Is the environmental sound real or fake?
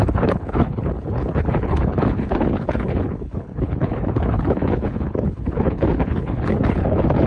fake